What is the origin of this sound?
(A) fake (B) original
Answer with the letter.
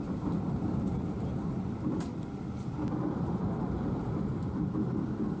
A